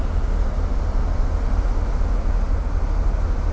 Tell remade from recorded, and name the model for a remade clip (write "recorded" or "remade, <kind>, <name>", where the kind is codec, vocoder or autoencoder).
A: recorded